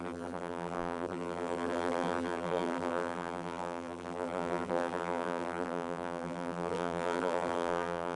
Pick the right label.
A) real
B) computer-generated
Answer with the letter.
B